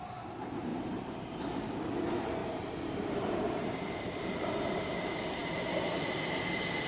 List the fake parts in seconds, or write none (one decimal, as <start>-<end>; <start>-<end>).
0.7-1.4; 2.4-4.6